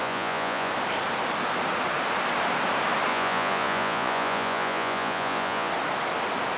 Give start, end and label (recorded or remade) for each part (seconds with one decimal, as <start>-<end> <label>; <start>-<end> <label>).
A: 0.0-0.7 remade; 0.7-3.1 recorded; 3.1-5.7 remade; 5.7-6.6 recorded